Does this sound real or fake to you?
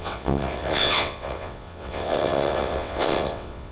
fake